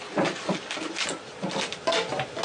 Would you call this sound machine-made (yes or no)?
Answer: no